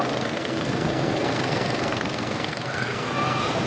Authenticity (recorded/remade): remade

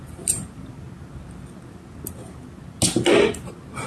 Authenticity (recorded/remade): recorded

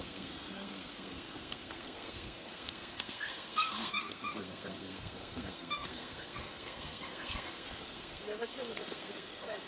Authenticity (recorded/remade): remade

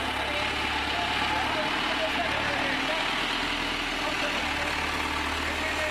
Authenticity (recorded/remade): recorded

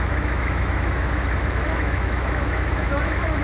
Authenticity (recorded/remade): remade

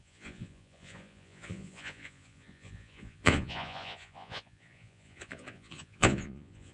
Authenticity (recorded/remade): remade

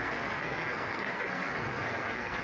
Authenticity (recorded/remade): remade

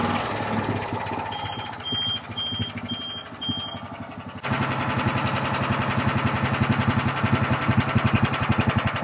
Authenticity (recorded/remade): recorded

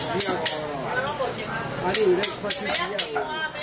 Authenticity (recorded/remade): recorded